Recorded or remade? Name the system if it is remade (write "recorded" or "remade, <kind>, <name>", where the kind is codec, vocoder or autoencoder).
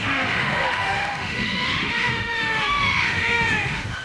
remade, autoencoder, DAC-VAE